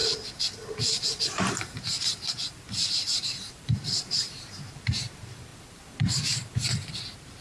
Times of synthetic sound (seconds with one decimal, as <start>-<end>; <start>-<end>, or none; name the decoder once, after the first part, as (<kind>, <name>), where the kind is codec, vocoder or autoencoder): 1.3-7.4 (vocoder, BigVGAN v2)